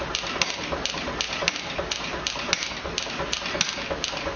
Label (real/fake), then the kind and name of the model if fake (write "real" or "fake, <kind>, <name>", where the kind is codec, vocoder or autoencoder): real